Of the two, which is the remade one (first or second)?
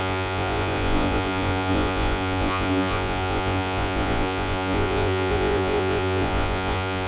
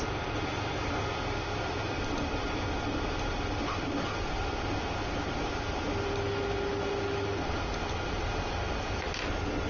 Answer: first